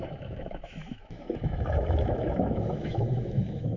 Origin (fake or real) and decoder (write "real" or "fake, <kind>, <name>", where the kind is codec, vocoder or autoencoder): fake, autoencoder, DAC-VAE